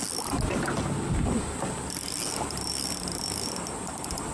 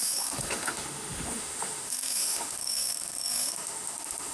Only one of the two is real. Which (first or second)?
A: first